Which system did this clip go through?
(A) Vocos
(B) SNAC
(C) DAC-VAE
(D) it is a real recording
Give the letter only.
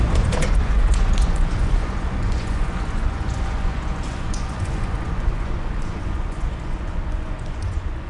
A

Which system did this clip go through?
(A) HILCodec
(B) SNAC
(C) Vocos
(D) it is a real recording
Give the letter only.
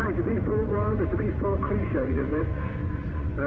C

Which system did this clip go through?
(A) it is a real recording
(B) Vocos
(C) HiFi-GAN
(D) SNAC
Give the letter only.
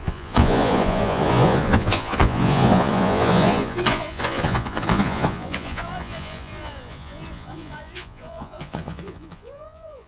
B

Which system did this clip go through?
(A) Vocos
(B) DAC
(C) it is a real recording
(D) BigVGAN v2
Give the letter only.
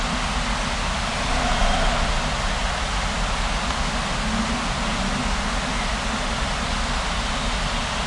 C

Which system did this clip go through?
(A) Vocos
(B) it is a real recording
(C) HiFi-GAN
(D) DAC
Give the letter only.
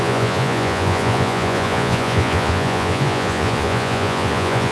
A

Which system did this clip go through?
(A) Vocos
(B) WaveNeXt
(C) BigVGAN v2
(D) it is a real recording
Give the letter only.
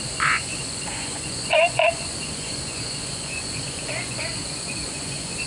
A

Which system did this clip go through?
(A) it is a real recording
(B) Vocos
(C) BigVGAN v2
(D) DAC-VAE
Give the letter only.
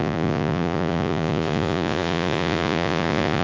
B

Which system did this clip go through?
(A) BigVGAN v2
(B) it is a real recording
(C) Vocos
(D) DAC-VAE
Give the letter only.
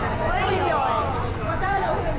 C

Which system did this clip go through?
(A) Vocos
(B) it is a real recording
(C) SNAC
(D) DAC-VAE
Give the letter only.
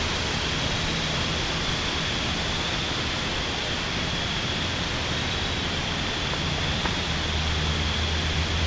B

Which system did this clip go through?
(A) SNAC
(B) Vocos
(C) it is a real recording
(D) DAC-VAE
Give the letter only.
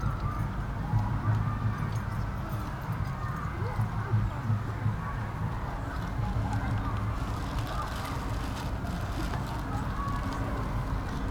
C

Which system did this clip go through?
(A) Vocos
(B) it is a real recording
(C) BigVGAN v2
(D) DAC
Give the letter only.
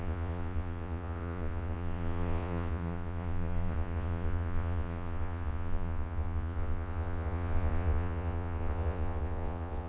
A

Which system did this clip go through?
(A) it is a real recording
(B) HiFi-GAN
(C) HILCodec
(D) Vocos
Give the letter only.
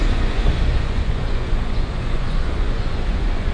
D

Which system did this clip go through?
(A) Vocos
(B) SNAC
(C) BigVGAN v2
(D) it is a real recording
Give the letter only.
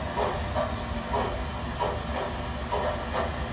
D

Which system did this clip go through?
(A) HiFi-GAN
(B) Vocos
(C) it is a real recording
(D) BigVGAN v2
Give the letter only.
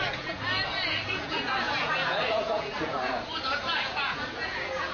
B